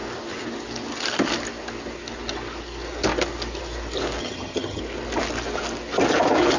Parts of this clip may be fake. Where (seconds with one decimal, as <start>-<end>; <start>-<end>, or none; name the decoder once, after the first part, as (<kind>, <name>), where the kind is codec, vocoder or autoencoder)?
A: 4.2-4.8 (vocoder, HiFi-GAN)